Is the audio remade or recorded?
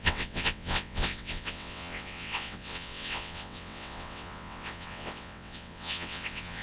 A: remade